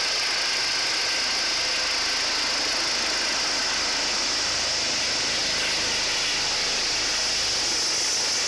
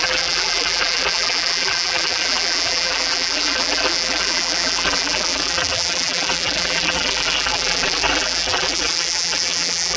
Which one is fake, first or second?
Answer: second